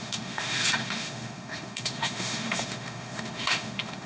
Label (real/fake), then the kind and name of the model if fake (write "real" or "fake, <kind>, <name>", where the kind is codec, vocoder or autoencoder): fake, autoencoder, DAC-VAE